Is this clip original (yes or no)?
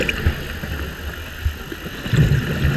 yes